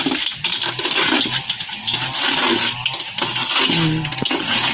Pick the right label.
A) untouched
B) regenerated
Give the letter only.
A